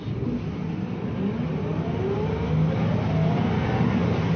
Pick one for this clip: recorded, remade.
recorded